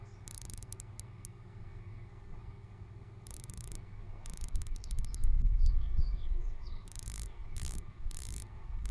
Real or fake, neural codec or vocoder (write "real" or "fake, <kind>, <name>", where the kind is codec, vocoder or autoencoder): fake, codec, SNAC